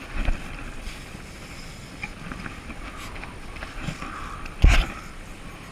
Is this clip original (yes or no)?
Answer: yes